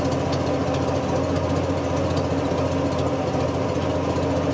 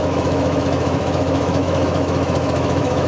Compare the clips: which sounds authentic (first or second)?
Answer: first